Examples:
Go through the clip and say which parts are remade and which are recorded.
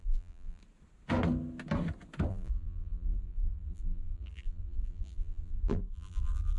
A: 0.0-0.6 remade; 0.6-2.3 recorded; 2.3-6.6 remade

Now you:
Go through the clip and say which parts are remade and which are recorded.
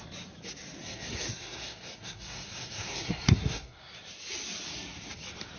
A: 0.0-0.8 recorded; 0.8-4.0 remade; 4.0-5.6 recorded